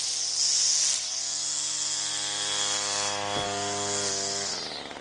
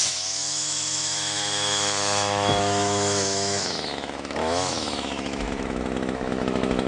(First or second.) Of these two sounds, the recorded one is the first